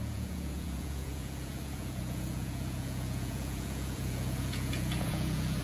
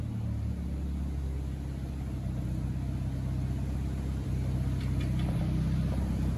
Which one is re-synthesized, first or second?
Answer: first